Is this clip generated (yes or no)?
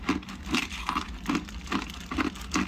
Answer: no